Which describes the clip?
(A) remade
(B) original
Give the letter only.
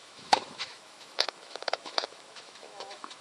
A